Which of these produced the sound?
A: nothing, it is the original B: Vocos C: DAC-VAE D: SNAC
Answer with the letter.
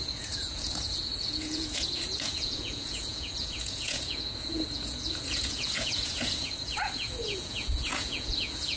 B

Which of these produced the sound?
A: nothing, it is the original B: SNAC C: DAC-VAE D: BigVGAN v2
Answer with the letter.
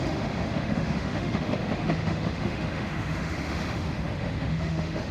C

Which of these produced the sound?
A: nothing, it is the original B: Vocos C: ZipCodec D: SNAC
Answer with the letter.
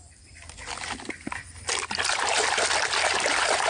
A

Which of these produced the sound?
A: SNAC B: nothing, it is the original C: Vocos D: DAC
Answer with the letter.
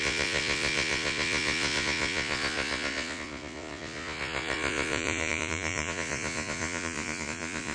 C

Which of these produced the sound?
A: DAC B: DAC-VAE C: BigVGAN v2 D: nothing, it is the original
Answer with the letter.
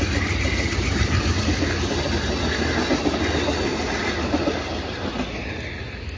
D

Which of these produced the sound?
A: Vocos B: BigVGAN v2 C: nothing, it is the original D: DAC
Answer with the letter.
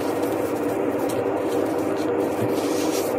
C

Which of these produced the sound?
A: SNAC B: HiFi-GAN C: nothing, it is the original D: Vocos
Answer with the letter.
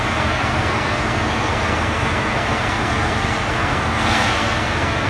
A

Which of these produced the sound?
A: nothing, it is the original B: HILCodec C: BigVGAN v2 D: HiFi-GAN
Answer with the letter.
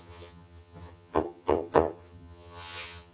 D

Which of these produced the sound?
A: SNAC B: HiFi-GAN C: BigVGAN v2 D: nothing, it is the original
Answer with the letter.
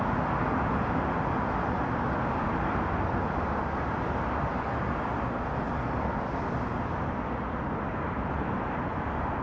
D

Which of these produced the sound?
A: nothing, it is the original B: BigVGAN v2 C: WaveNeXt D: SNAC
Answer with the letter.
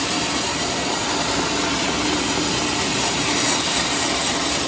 B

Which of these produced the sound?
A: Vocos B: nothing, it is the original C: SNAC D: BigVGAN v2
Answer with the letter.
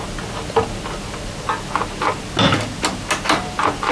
B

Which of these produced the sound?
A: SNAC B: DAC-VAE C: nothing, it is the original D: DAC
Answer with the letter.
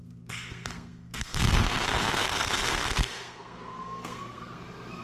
A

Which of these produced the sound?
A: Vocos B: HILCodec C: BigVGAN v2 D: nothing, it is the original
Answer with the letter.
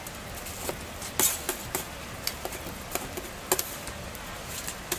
D